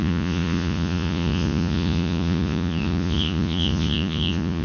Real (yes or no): no